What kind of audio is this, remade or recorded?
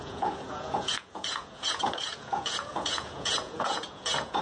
remade